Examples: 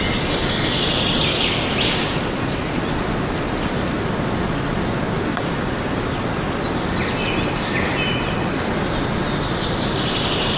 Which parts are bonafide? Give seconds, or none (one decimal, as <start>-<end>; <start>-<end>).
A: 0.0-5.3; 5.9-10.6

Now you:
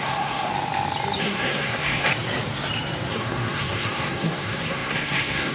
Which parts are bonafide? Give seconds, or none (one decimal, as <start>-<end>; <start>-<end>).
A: 0.5-1.2; 2.1-3.1

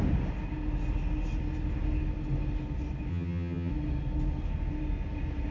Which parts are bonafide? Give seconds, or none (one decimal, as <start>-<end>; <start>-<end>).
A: 0.0-3.1; 3.7-5.5

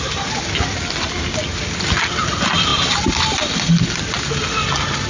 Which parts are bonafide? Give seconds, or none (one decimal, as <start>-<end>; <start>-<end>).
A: 0.0-5.1

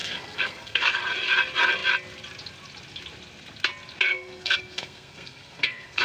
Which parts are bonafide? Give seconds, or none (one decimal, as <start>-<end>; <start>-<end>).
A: 1.0-4.1

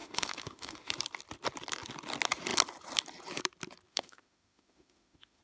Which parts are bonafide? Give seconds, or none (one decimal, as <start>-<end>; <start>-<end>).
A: 0.9-3.9

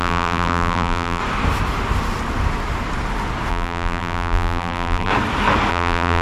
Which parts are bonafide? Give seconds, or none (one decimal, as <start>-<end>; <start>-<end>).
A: 1.2-3.5; 5.1-5.7